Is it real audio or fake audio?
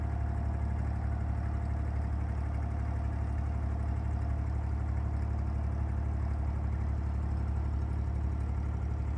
real